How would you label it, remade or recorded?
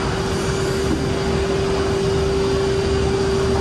recorded